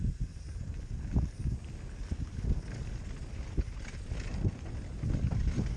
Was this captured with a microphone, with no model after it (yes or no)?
yes